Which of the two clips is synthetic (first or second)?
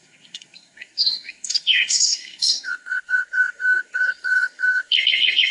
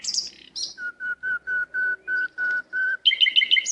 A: first